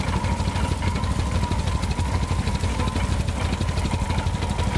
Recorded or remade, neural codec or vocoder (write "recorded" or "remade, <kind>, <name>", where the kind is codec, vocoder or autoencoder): recorded